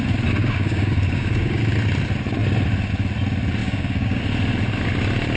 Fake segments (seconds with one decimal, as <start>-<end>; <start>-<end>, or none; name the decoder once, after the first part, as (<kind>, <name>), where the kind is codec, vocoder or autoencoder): 0.4-1.6 (codec, DAC); 3.6-4.2